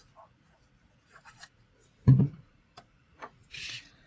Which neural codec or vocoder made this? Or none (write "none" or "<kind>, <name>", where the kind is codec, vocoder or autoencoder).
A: vocoder, Vocos